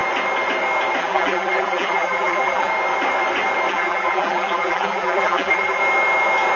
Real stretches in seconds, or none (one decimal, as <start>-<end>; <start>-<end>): 0.0-1.0; 2.7-3.7; 5.8-6.6

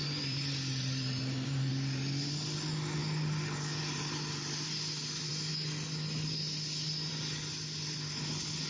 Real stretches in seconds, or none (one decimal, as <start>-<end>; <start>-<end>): 1.7-8.7

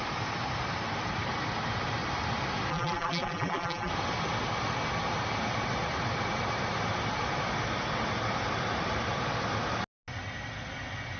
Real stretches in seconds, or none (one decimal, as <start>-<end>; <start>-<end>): 0.0-2.7; 3.9-11.2

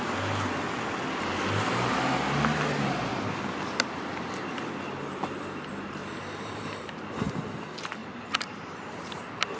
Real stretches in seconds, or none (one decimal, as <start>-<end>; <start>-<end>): 0.0-6.0; 7.4-8.0; 9.2-9.6

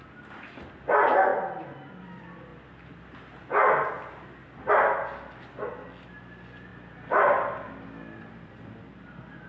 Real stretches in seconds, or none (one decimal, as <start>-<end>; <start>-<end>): 0.0-9.5